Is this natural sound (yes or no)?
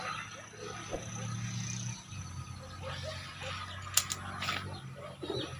yes